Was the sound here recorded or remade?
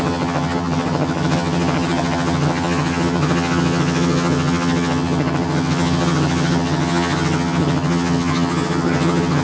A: remade